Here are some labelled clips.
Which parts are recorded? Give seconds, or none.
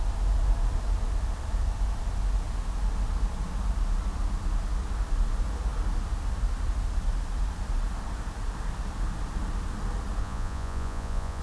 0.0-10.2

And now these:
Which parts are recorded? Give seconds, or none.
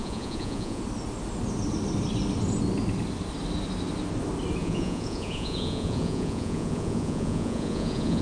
0.8-4.6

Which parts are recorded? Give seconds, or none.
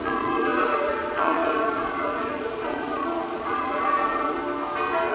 4.4-5.1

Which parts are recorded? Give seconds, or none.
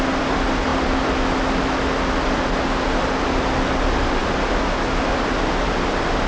0.0-6.3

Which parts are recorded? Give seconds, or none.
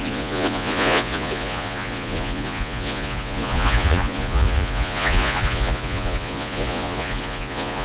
none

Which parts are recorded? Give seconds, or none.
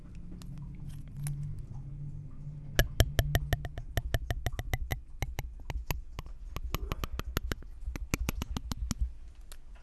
0.0-9.8